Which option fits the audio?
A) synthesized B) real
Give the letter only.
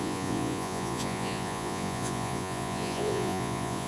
A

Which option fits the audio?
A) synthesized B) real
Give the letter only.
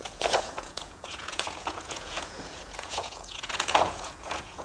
A